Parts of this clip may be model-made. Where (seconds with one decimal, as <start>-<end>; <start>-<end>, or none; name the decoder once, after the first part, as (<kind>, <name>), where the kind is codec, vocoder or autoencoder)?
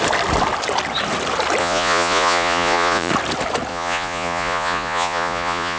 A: 1.6-3.1 (vocoder, Vocos); 3.7-5.8